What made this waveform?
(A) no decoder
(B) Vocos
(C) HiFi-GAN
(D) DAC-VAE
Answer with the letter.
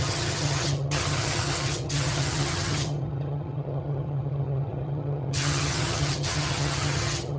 C